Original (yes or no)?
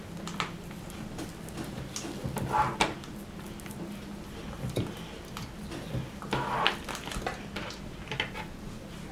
yes